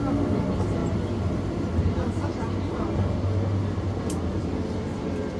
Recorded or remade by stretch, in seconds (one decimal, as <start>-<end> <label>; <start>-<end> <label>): 0.0-5.4 recorded